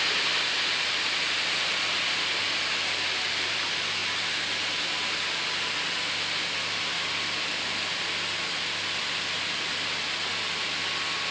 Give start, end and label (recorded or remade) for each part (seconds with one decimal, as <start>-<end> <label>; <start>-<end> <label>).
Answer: 0.0-11.3 recorded